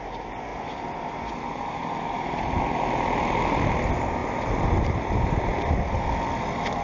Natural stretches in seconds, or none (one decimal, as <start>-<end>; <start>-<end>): 0.0-0.5; 2.6-4.2; 5.7-6.8